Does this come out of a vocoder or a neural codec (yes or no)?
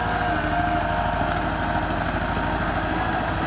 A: no